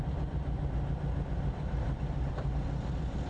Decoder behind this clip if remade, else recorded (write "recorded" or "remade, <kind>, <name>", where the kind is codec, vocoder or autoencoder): remade, vocoder, BigVGAN v2